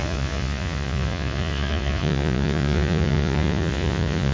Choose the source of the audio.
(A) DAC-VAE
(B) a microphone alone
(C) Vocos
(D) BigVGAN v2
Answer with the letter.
C